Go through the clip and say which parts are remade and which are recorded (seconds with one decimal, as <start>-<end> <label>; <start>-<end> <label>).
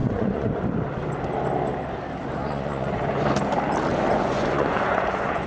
0.0-0.6 remade; 0.6-2.4 recorded; 2.4-3.3 remade; 3.3-3.9 recorded; 3.9-5.5 remade